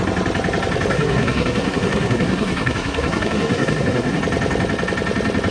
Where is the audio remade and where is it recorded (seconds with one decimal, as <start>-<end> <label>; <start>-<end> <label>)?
0.0-0.9 recorded; 0.9-4.2 remade; 4.2-5.5 recorded